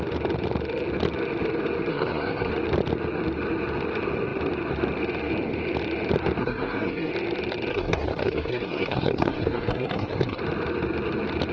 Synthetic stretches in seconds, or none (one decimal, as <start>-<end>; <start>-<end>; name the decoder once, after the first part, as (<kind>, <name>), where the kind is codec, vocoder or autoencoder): 1.9-2.5 (codec, SNAC); 6.4-7.1; 7.7-10.4